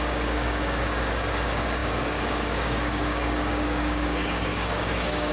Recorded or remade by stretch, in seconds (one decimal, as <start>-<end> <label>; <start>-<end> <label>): 0.0-5.3 remade